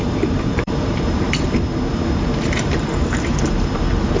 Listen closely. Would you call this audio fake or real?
fake